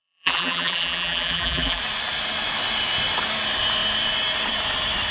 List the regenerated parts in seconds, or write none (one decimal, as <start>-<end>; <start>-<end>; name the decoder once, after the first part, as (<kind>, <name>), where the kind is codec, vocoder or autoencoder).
0.0-1.8 (vocoder, BigVGAN v2)